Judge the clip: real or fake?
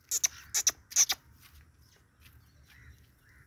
real